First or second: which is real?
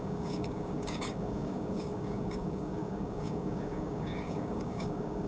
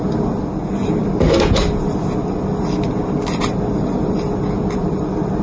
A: second